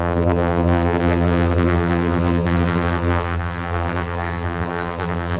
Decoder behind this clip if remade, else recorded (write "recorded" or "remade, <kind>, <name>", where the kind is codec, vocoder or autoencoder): remade, vocoder, BigVGAN v2